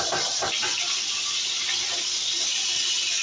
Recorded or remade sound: recorded